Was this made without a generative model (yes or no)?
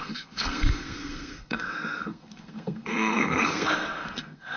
no